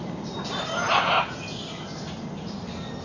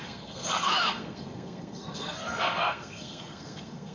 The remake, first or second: second